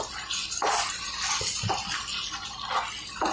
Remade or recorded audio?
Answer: recorded